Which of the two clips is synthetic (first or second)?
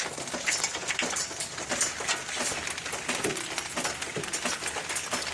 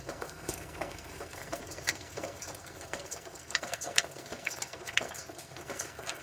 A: second